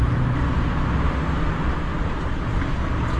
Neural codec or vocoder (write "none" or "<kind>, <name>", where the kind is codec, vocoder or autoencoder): vocoder, BigVGAN v2